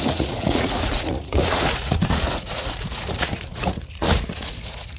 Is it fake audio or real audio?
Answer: fake